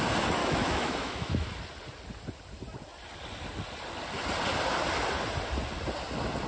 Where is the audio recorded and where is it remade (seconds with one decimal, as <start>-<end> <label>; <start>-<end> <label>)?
0.0-0.4 recorded; 0.4-1.5 remade; 1.5-6.5 recorded